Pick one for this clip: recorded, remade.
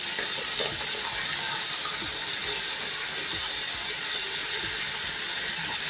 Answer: recorded